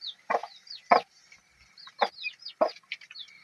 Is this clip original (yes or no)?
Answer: yes